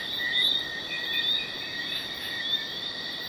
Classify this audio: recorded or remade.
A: remade